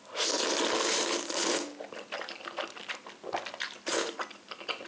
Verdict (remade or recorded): recorded